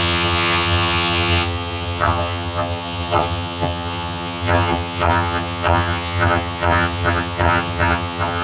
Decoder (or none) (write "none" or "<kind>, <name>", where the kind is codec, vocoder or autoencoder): vocoder, HiFi-GAN